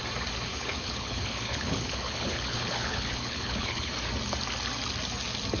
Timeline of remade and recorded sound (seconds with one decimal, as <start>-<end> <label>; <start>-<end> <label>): 0.0-0.5 recorded; 0.5-3.9 remade; 3.9-5.6 recorded